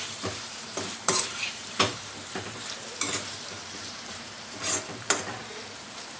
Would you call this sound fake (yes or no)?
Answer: yes